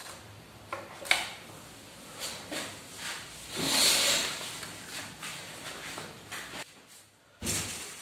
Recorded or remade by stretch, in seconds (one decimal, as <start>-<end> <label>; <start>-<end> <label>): 0.0-0.9 remade; 0.9-8.0 recorded